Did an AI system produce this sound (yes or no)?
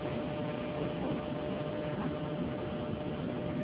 no